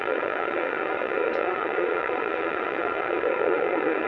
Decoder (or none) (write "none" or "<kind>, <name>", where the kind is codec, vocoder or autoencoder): vocoder, Vocos